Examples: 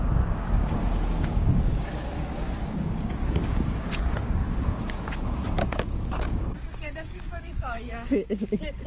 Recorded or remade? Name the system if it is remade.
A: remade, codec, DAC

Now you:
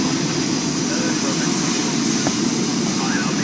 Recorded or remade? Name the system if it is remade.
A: recorded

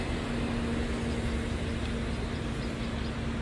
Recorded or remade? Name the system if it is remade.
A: recorded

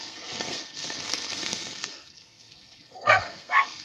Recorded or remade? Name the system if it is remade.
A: remade, codec, SNAC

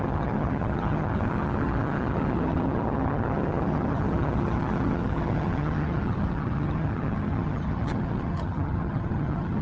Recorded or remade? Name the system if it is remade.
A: remade, vocoder, HiFi-GAN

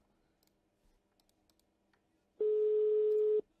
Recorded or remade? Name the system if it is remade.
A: recorded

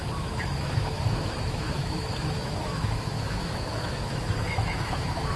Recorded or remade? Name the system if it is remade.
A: remade, autoencoder, DAC-VAE